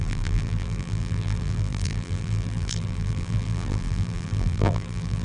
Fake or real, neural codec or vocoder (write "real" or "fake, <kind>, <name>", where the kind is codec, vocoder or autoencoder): fake, vocoder, BigVGAN v2